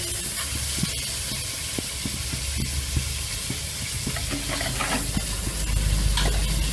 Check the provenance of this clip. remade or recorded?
recorded